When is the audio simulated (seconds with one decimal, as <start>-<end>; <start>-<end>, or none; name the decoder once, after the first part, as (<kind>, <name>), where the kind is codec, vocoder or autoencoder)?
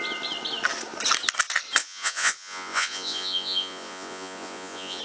1.8-5.0 (vocoder, Vocos)